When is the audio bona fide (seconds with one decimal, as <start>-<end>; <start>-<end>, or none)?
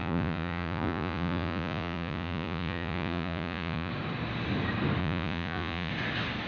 3.9-5.0; 5.9-6.5